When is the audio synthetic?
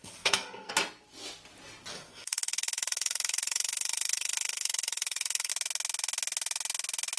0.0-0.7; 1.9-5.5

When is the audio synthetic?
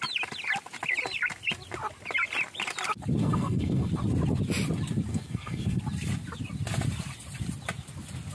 3.2-3.9; 5.1-5.8